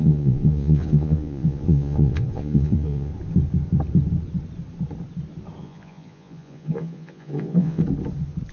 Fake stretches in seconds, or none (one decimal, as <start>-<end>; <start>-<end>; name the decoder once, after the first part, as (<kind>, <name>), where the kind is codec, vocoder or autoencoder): 0.0-3.1 (vocoder, Vocos); 5.6-7.8